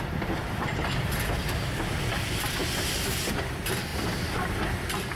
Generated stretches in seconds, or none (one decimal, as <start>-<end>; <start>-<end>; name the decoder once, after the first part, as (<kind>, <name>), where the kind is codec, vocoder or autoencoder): 2.6-3.2 (vocoder, BigVGAN v2); 3.9-4.5